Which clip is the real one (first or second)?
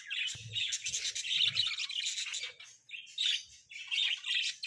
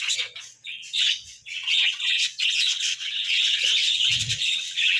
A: first